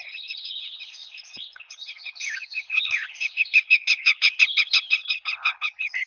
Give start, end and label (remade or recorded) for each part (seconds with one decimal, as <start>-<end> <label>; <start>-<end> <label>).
0.0-6.1 remade